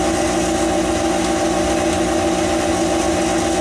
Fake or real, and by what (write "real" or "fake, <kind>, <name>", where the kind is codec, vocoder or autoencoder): real